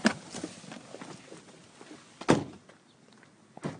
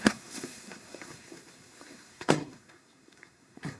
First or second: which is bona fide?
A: first